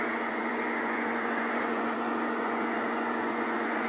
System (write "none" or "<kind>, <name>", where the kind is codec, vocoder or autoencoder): vocoder, Vocos